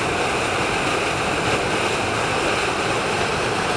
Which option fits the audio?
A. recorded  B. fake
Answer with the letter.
A